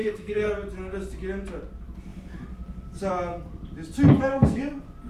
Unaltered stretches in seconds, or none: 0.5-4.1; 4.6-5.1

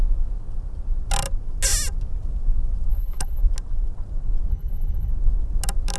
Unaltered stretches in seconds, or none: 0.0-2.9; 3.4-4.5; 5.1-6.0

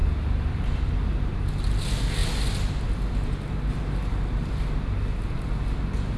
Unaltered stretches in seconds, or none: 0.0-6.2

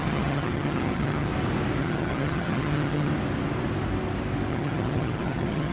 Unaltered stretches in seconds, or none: 1.3-1.8; 3.1-4.5